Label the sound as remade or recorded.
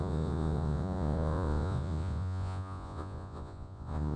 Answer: remade